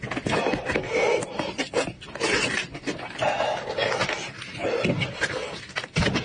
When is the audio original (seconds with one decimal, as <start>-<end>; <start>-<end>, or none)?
0.0-6.2